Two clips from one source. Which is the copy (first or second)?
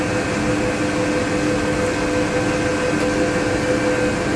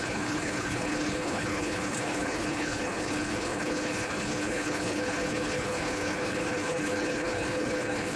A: second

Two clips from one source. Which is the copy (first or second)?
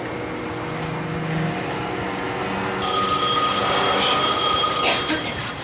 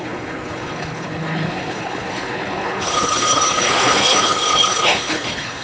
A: second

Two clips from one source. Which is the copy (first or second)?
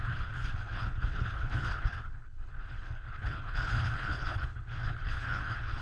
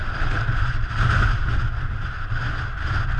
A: first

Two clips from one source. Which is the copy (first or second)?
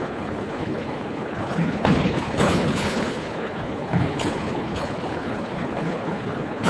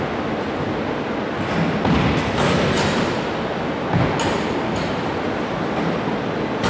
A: first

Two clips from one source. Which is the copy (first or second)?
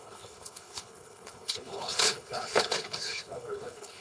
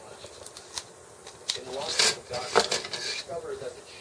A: first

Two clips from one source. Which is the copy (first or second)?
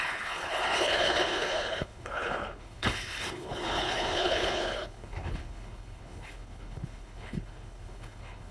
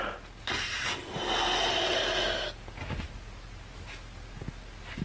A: first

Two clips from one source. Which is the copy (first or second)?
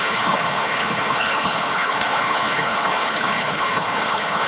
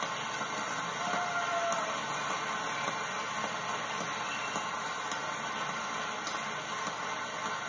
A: first